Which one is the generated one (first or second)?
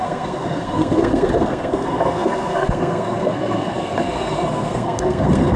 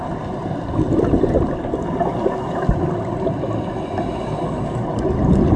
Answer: first